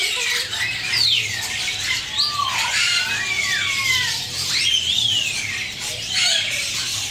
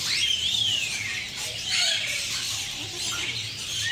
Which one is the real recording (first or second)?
first